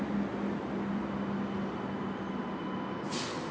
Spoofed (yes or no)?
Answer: no